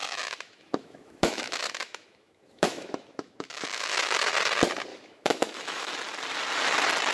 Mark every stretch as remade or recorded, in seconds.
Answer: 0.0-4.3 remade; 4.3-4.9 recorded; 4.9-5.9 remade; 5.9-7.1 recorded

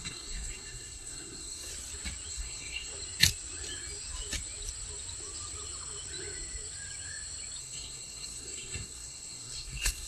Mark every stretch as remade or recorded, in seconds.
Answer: 0.0-1.7 remade; 1.7-2.3 recorded; 2.3-2.9 remade; 2.9-7.6 recorded; 7.6-10.1 remade

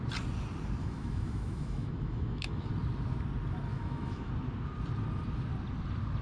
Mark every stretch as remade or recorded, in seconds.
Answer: 0.0-0.8 recorded; 0.8-2.7 remade; 2.7-3.7 recorded; 3.7-4.3 remade; 4.3-6.2 recorded

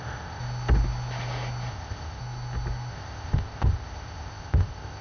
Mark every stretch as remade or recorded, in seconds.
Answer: 0.0-0.4 remade; 0.4-1.7 recorded; 1.7-2.2 remade; 2.2-2.9 recorded; 2.9-5.0 remade

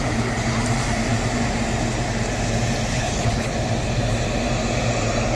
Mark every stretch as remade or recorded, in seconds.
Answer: 0.0-2.9 recorded; 2.9-3.5 remade; 3.5-5.3 recorded

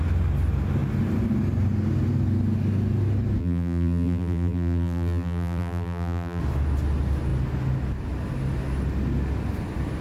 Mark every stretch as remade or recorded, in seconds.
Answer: 0.0-3.4 recorded; 3.4-6.4 remade; 6.4-10.0 recorded